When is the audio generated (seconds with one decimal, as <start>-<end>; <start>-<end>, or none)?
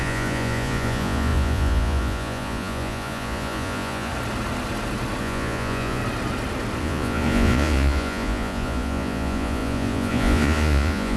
0.0-4.1; 5.2-6.0; 6.8-11.2